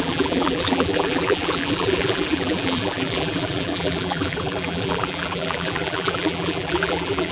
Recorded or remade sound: remade